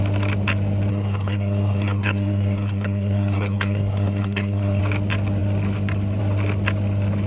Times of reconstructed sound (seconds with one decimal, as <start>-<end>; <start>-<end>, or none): 0.9-4.8